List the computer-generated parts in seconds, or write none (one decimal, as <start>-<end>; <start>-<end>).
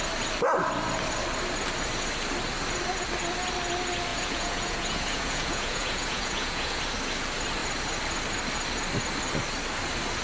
4.1-6.8